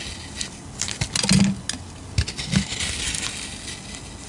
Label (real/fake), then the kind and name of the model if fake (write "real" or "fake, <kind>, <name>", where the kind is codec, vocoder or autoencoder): real